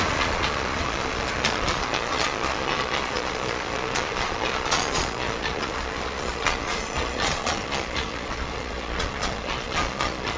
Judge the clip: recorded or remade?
remade